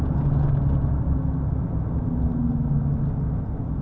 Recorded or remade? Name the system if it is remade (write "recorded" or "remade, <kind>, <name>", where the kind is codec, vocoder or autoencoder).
recorded